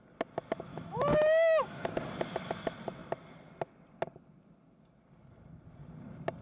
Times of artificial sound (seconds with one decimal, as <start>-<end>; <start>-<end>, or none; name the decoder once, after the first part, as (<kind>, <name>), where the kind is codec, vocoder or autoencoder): 0.7-2.0 (autoencoder, DAC-VAE)